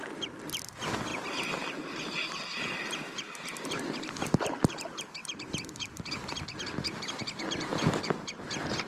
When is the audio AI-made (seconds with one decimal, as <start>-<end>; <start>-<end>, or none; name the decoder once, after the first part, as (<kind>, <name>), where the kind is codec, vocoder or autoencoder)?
1.1-4.3 (vocoder, BigVGAN v2); 5.2-7.1; 7.7-8.3